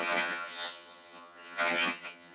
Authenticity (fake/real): fake